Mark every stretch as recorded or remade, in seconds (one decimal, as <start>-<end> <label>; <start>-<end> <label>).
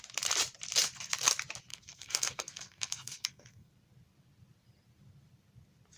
0.0-1.7 recorded; 1.7-3.7 remade; 3.7-6.0 recorded